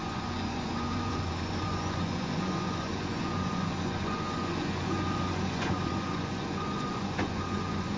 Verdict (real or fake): fake